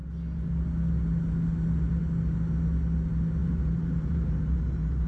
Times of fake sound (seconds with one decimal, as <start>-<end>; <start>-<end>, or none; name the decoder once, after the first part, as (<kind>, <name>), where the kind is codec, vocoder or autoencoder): 3.4-4.6 (vocoder, BigVGAN v2)